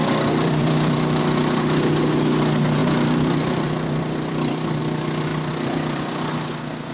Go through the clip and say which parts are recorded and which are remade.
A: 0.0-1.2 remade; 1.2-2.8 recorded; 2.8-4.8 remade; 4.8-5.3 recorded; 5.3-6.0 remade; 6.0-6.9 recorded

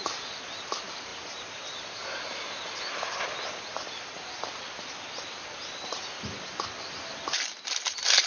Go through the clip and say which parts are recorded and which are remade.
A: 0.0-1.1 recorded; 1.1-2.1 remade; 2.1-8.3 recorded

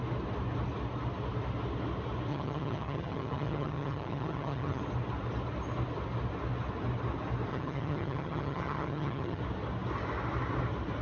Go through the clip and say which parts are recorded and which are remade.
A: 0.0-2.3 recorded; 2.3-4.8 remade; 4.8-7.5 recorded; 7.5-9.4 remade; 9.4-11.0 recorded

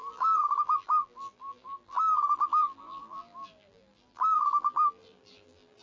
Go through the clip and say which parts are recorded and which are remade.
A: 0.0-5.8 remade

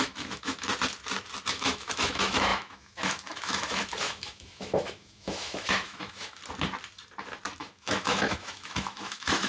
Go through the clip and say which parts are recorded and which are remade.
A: 0.0-0.7 remade; 0.7-1.5 recorded; 1.5-6.4 remade; 6.4-7.6 recorded; 7.6-9.5 remade

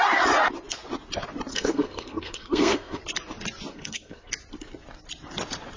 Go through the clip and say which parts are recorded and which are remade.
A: 0.0-1.5 recorded; 1.5-3.0 remade; 3.0-3.7 recorded; 3.7-4.3 remade; 4.3-5.8 recorded

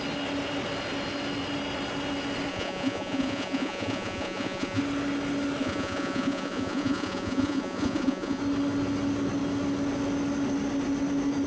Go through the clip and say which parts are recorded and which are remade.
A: 0.0-2.5 recorded; 2.5-4.8 remade; 4.8-5.6 recorded; 5.6-8.4 remade; 8.4-11.5 recorded

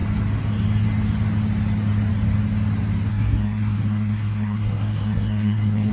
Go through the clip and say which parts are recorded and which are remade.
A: 0.0-3.1 recorded; 3.1-5.9 remade